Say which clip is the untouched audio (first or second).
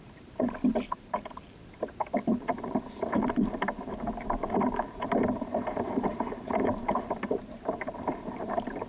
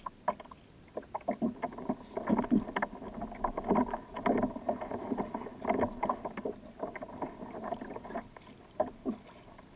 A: second